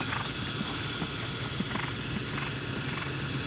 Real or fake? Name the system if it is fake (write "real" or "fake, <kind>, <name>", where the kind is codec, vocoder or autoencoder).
real